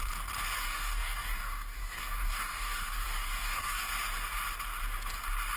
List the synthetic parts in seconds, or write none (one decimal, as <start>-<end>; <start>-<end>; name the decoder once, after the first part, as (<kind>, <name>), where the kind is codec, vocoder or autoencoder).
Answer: 0.6-3.9 (codec, DAC)

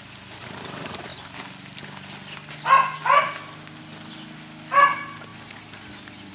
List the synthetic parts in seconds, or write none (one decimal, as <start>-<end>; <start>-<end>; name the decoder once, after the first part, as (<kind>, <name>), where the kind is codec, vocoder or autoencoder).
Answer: none